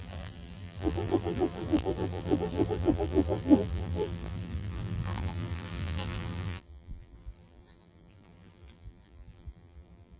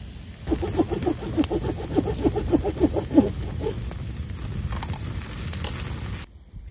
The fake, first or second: first